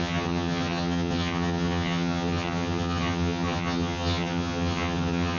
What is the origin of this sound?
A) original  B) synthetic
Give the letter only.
B